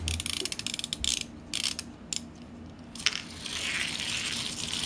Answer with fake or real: real